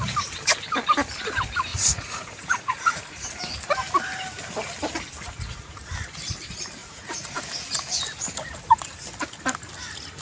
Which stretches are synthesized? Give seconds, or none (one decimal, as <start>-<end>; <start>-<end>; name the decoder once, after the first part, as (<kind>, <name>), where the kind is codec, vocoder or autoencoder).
1.7-3.3 (vocoder, Vocos); 5.2-5.8; 6.8-7.4